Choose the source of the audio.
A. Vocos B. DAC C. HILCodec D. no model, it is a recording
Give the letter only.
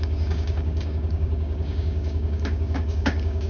B